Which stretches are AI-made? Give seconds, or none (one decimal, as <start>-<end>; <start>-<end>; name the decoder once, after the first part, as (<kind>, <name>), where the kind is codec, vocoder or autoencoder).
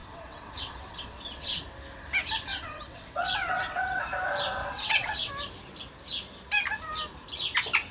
0.0-1.6 (vocoder, WaveNeXt); 2.5-4.0; 4.6-5.3